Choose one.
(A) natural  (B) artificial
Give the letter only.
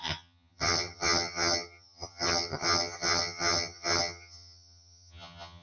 B